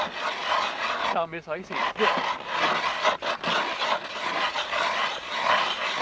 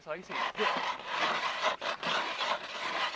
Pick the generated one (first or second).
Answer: second